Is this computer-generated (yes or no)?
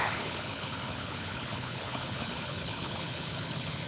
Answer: yes